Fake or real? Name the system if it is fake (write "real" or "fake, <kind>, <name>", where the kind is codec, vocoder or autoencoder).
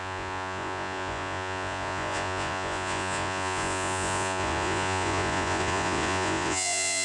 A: fake, vocoder, Vocos